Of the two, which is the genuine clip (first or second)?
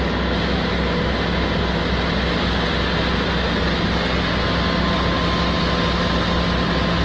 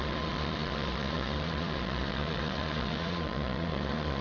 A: first